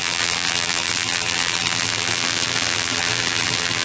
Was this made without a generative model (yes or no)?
no